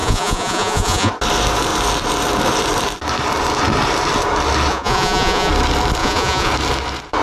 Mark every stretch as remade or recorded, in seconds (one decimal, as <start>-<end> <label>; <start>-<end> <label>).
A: 0.0-1.1 remade; 1.1-4.7 recorded; 4.7-5.5 remade; 5.5-6.0 recorded; 6.0-6.5 remade; 6.5-7.2 recorded